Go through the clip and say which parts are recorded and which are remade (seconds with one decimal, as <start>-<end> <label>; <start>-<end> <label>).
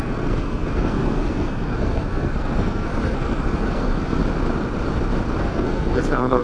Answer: 0.0-4.2 remade; 4.2-5.4 recorded; 5.4-6.4 remade